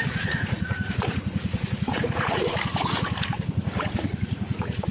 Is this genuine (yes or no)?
no